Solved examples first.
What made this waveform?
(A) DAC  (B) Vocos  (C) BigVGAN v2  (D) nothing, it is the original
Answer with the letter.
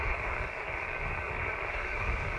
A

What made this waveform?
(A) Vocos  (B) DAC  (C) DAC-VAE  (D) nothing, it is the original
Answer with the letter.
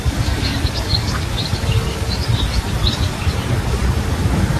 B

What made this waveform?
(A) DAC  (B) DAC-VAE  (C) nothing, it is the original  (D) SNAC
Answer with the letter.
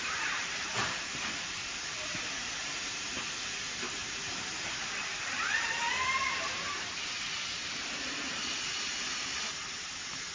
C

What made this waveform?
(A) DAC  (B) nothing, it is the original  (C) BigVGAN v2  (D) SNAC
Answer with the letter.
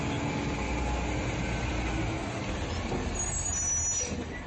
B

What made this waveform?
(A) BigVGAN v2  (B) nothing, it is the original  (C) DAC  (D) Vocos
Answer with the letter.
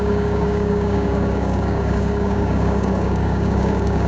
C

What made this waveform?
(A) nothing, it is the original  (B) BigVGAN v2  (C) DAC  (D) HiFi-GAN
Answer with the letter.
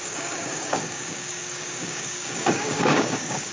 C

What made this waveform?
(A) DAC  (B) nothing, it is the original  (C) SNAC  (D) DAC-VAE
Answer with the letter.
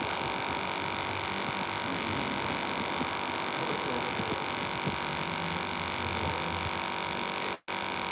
B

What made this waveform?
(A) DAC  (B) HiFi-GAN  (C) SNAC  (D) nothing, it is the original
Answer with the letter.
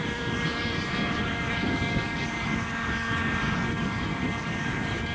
A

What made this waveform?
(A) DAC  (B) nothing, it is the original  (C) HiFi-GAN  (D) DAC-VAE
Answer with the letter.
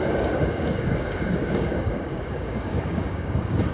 A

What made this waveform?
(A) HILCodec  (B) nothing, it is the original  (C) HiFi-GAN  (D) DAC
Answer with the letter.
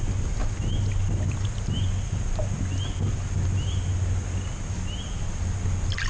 B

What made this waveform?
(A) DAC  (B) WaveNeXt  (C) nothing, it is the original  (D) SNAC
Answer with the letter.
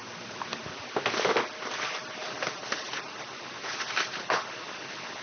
C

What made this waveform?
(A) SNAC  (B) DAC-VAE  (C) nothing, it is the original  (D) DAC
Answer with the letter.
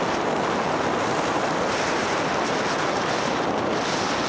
C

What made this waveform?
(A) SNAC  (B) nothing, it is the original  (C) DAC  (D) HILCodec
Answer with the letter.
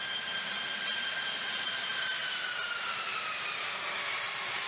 B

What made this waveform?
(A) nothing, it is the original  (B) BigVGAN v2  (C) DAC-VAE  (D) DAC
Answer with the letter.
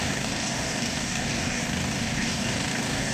D